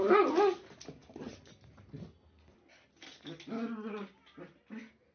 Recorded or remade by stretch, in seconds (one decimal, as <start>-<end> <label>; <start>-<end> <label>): 0.0-5.1 recorded